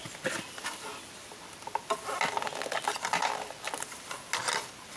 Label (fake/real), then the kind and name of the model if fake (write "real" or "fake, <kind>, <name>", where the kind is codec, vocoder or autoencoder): real